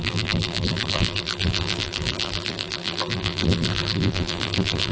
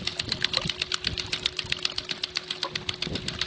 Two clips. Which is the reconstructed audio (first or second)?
first